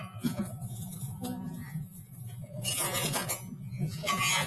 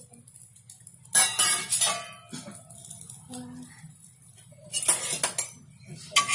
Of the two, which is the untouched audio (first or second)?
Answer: second